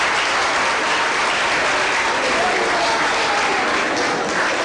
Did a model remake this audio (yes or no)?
no